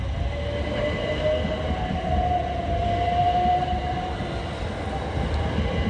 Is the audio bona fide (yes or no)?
yes